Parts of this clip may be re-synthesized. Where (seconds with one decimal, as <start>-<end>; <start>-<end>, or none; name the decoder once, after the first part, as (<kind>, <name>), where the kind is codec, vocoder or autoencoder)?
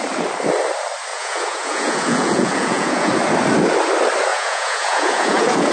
1.1-3.1 (vocoder, Vocos); 4.3-5.7